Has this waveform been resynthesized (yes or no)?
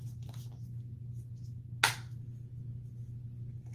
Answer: no